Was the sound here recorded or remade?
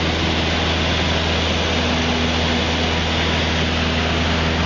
recorded